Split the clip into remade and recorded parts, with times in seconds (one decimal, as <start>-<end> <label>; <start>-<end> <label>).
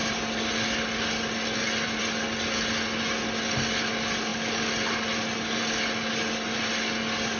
0.0-7.4 recorded